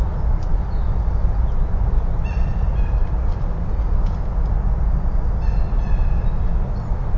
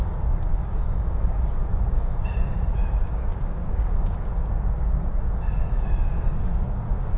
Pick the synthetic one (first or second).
second